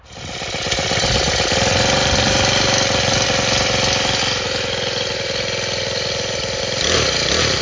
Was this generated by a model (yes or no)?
no